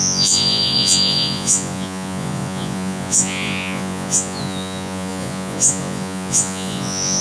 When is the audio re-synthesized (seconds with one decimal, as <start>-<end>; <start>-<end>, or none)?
0.0-7.2